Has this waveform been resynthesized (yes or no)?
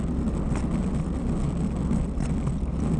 no